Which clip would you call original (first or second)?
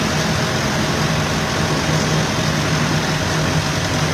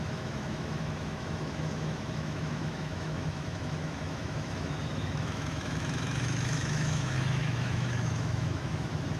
first